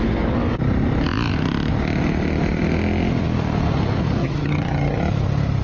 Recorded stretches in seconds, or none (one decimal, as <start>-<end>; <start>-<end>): 0.0-4.2; 5.0-5.6